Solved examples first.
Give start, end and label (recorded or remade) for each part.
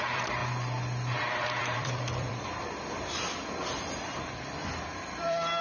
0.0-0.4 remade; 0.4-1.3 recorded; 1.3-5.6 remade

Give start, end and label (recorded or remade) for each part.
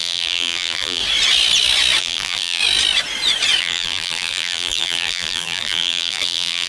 0.0-1.0 remade; 1.0-2.0 recorded; 2.0-2.6 remade; 2.6-3.6 recorded; 3.6-6.7 remade